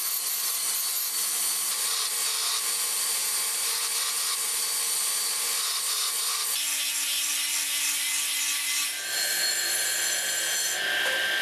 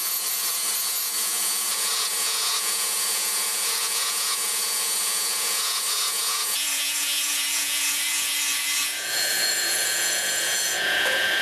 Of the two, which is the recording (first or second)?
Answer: first